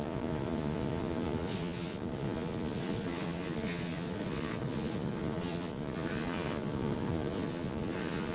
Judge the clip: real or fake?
fake